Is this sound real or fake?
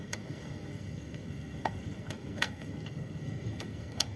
fake